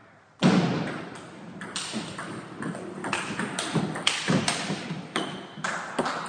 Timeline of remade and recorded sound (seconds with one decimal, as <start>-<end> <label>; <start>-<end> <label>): 0.0-6.3 recorded